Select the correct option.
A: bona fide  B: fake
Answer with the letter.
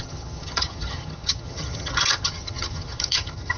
B